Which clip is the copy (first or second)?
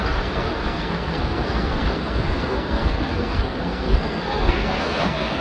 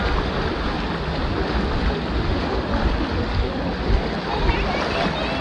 first